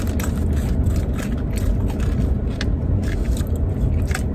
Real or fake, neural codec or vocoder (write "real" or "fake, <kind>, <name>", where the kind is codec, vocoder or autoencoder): real